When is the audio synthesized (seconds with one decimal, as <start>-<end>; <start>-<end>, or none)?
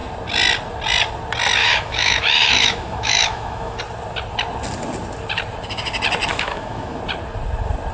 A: 1.6-3.8; 6.3-7.0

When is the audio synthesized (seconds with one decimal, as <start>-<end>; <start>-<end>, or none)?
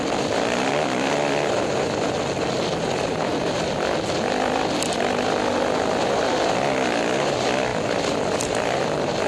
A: none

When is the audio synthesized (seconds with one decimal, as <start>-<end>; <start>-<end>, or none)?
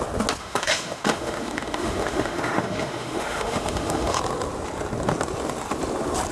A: 0.4-4.2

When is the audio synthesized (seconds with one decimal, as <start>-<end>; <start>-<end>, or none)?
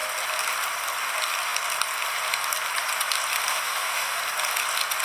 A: 3.5-4.2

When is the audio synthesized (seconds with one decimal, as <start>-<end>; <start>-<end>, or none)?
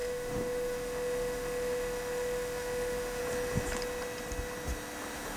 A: 0.0-3.2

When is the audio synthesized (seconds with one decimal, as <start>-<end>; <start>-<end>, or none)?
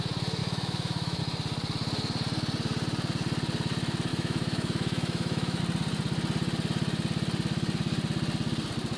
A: 0.4-1.2; 4.1-5.6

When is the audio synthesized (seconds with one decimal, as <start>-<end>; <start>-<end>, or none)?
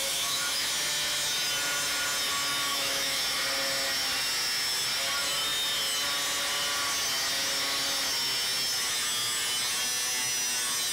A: 0.0-0.7; 2.7-3.2